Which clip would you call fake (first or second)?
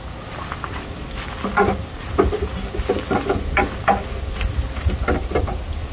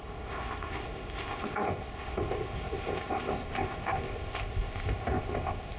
second